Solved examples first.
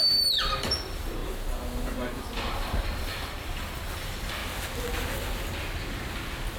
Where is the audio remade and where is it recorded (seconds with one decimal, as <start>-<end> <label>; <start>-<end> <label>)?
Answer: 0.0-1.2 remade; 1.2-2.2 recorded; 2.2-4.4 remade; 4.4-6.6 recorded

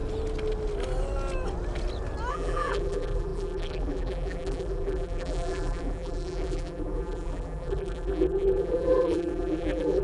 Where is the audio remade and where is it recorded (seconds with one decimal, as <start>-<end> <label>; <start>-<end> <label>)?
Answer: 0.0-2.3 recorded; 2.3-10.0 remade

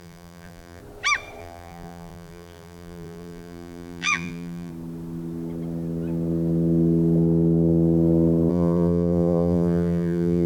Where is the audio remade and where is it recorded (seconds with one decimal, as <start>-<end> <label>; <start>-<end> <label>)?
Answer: 0.0-0.8 remade; 0.8-1.4 recorded; 1.4-4.7 remade; 4.7-8.5 recorded; 8.5-10.5 remade